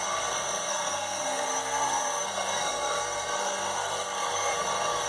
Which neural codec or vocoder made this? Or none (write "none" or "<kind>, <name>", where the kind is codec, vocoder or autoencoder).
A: codec, SNAC